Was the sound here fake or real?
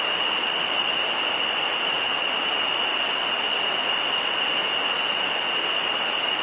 real